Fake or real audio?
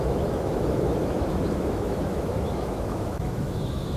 fake